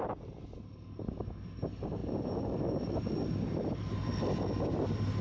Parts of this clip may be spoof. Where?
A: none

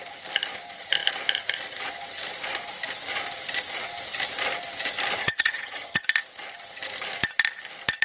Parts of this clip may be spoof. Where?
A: 5.2-6.0

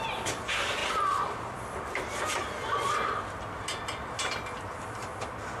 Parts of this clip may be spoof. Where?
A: none

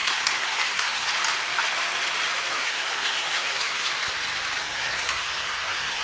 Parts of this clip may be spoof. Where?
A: 0.0-1.1; 2.5-3.9; 4.6-6.0